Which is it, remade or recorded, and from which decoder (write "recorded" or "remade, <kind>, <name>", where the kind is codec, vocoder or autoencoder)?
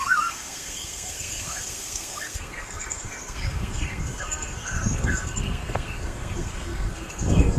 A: remade, codec, SNAC